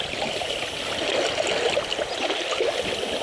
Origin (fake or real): real